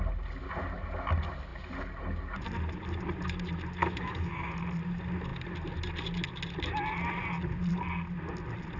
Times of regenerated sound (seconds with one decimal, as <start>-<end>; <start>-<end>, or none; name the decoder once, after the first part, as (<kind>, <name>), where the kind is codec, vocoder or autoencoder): 3.8-4.5 (autoencoder, DAC-VAE)